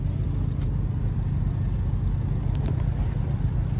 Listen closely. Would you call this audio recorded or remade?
recorded